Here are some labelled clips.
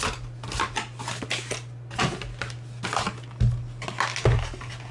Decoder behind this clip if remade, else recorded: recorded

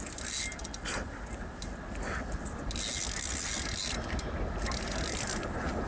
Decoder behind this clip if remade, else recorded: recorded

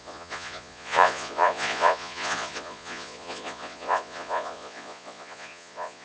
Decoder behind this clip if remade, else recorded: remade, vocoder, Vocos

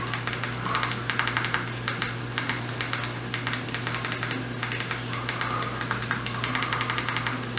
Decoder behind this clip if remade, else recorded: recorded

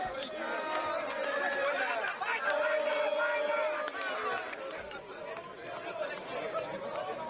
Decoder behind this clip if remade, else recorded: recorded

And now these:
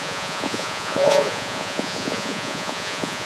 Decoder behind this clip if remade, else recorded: remade, vocoder, Vocos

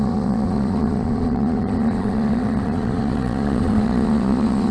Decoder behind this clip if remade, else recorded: remade, vocoder, Vocos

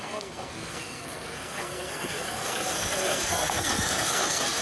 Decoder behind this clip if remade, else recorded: remade, codec, SNAC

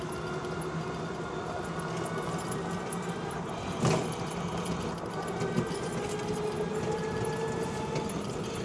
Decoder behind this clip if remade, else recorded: recorded